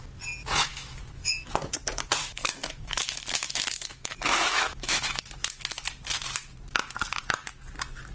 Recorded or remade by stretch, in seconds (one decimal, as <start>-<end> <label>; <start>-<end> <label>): 0.0-0.4 recorded; 0.4-1.7 remade; 1.7-2.2 recorded; 2.2-5.2 remade; 5.2-8.1 recorded